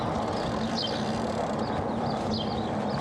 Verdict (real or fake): real